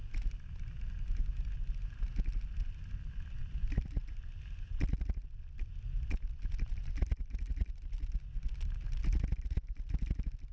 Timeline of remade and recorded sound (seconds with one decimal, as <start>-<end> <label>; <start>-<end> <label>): 0.0-10.5 recorded